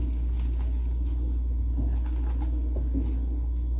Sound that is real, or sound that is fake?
real